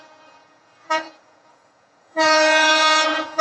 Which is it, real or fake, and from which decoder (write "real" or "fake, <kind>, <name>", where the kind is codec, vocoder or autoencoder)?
fake, vocoder, Vocos